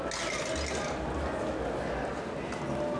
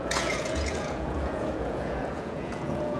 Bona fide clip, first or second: first